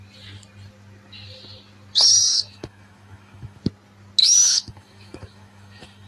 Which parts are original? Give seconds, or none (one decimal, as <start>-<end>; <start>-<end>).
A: 0.0-2.3; 3.6-4.2